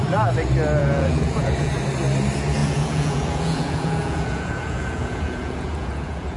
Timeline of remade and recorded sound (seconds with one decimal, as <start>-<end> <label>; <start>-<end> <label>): 0.0-0.8 recorded; 0.8-1.7 remade; 1.7-2.6 recorded; 2.6-6.4 remade